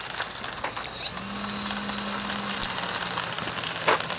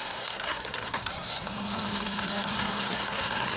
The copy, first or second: second